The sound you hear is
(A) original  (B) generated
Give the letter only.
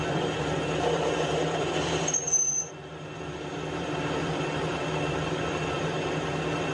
B